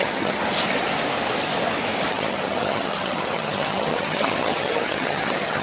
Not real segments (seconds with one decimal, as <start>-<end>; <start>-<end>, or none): 0.0-0.4; 2.1-5.6